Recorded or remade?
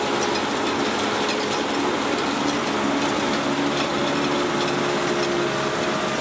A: recorded